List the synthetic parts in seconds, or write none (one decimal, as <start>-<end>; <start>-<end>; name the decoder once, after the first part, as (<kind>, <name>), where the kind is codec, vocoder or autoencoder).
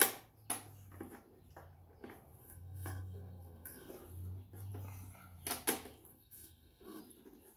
2.4-3.9 (codec, SNAC); 6.1-7.0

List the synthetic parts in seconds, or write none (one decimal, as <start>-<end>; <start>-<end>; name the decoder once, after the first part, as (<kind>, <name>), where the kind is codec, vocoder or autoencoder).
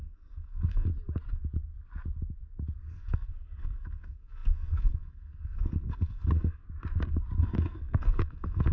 0.0-0.9 (codec, SNAC); 2.9-6.6; 7.4-8.7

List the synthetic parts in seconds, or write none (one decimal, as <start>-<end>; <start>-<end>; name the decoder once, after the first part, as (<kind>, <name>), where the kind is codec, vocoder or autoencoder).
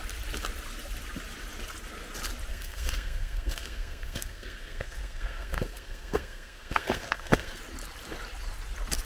2.5-7.6 (codec, SNAC)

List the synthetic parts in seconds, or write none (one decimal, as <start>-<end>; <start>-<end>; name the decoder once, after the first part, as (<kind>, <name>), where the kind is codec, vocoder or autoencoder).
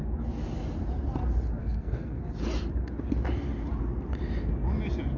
1.6-2.2 (codec, SNAC)